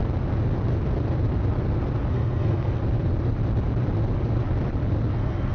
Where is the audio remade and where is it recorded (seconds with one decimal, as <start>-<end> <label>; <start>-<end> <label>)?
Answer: 0.0-2.1 recorded; 2.1-2.8 remade; 2.8-5.1 recorded; 5.1-5.5 remade